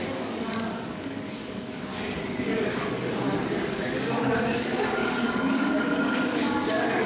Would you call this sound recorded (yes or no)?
no